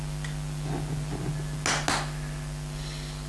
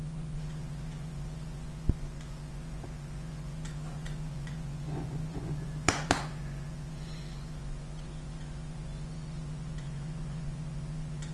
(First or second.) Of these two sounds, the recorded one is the first